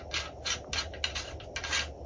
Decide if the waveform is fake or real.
real